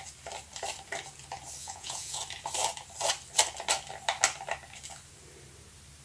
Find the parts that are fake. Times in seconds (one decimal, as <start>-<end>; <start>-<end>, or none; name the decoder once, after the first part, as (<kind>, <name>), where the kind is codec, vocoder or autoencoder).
1.6-2.2 (vocoder, Vocos)